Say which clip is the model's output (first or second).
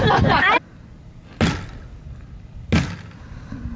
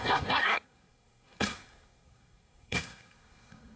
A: second